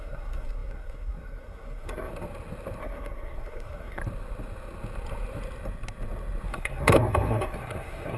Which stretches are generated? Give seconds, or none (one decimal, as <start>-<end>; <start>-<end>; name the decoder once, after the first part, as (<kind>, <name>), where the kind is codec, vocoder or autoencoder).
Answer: 0.0-2.1 (codec, SNAC); 2.8-4.0; 6.5-8.2